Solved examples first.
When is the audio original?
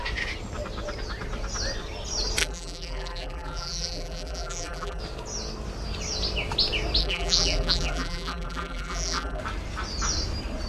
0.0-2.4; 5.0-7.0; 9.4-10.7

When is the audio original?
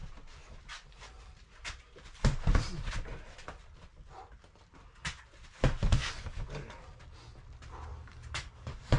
0.0-6.0; 6.8-7.9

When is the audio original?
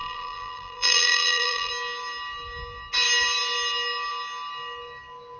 1.7-5.4